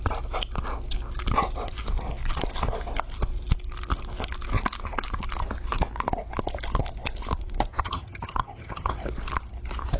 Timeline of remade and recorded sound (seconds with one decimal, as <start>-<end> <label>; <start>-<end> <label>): 0.0-7.7 recorded; 7.7-8.9 remade; 8.9-10.0 recorded